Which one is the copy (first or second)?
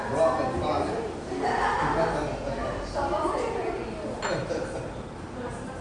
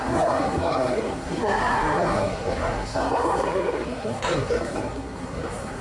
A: second